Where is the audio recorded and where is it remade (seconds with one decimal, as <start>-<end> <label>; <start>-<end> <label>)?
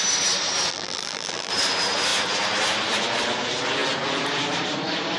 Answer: 0.0-0.7 recorded; 0.7-1.5 remade; 1.5-5.2 recorded